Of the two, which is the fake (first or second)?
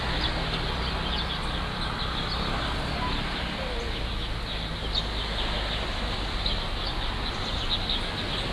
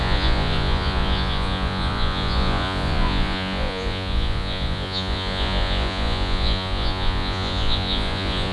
second